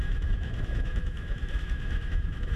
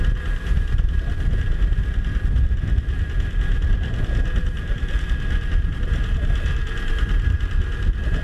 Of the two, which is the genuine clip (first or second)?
second